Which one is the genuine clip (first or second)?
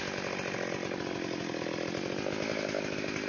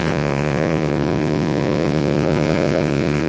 first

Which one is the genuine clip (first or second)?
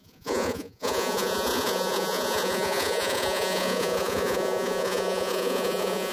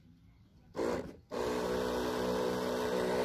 second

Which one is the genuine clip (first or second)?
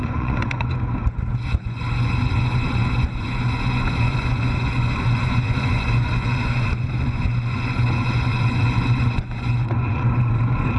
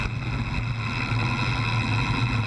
second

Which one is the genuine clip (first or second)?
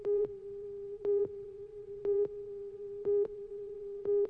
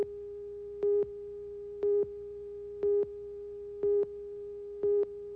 second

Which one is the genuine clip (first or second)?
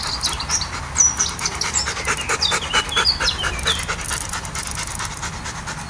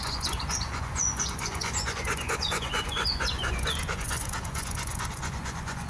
first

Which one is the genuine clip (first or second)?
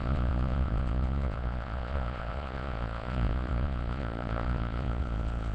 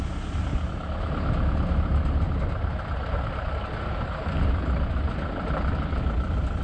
second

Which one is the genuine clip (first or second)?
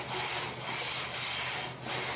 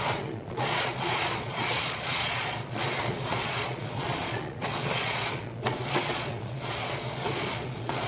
first